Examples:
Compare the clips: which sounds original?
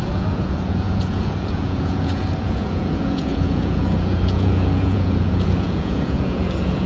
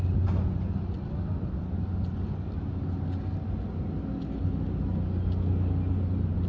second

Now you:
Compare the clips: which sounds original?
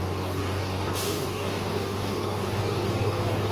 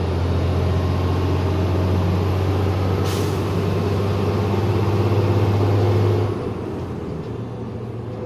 second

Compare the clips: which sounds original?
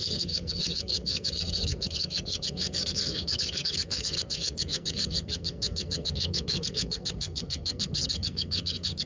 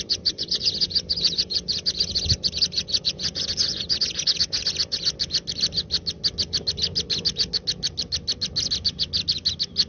second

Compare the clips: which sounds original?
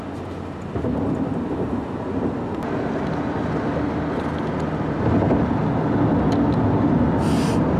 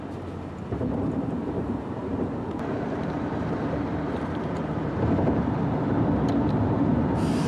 first